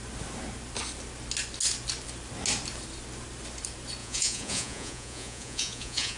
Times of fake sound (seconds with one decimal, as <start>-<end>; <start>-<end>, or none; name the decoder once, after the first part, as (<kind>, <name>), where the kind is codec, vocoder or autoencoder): 4.0-6.2 (vocoder, Vocos)